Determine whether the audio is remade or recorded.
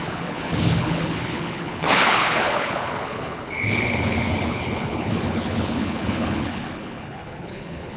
remade